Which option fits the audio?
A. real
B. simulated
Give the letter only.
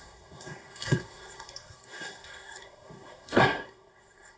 B